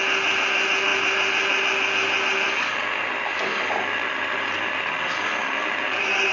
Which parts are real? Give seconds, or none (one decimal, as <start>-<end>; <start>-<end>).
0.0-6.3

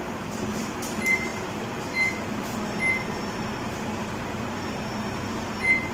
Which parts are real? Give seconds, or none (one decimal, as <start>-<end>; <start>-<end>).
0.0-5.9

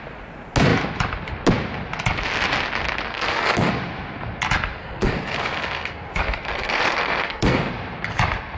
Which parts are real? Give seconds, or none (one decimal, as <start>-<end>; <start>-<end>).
0.0-3.1; 3.7-4.8; 7.7-8.6

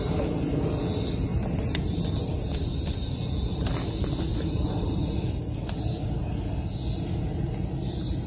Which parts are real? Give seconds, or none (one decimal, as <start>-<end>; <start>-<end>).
0.0-1.3; 3.9-4.3; 5.1-8.3